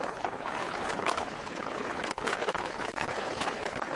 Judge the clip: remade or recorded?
remade